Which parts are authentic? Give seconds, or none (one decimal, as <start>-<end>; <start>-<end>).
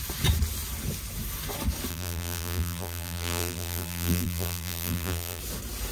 0.0-1.9; 5.4-5.9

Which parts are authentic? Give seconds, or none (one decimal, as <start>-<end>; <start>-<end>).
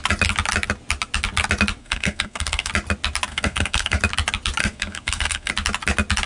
0.0-1.8; 2.7-3.3; 4.0-4.6; 5.5-6.3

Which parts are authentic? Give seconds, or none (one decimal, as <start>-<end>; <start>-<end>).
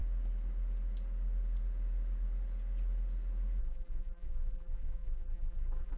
0.0-3.6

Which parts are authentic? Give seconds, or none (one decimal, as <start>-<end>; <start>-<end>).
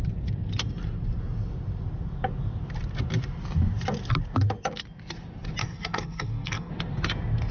0.0-5.6; 6.7-7.5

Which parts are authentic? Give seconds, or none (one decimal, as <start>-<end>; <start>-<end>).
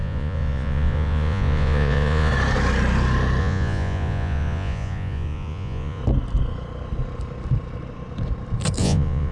2.3-3.4; 6.0-8.8